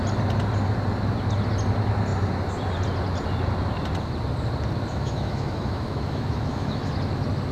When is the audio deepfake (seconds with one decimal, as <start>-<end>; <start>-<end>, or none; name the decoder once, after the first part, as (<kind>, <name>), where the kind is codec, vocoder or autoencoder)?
4.9-6.9 (autoencoder, DAC-VAE)